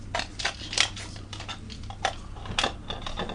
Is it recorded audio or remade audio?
recorded